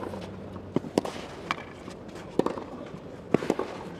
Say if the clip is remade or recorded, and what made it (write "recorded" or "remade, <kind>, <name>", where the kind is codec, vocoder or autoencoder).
recorded